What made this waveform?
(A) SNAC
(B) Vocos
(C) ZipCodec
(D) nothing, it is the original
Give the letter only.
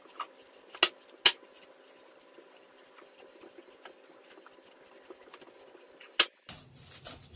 D